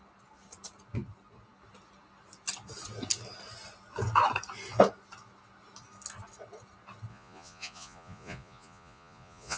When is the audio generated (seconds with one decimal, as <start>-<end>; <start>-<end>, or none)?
7.1-9.6